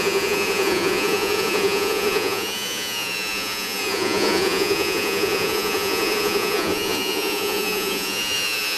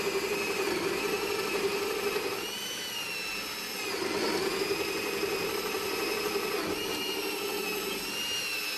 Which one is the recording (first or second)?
second